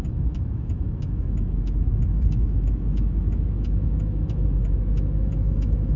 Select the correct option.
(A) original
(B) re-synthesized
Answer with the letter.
B